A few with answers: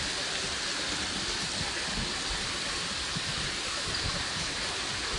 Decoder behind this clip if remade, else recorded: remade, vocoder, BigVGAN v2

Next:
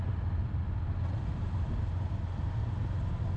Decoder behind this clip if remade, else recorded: recorded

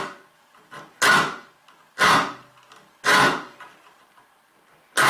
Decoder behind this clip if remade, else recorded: recorded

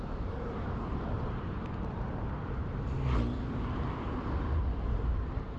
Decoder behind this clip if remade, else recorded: remade, vocoder, BigVGAN v2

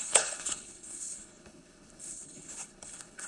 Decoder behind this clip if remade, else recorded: remade, codec, HILCodec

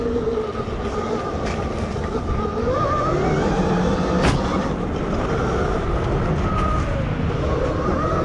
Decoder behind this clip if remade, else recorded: recorded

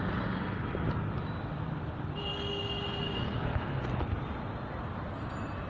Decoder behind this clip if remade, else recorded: recorded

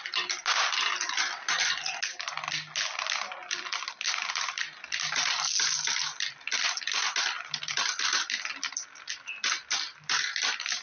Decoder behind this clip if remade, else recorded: recorded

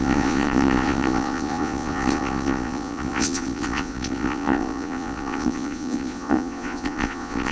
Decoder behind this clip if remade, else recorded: remade, vocoder, Vocos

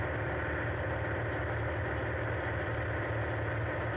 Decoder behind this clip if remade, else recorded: recorded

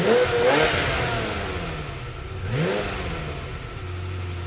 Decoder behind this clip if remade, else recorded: recorded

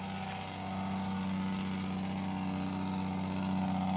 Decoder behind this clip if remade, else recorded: recorded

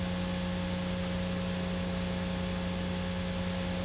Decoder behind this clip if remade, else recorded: recorded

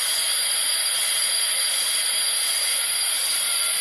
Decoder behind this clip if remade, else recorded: recorded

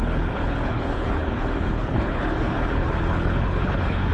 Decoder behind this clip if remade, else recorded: remade, codec, HILCodec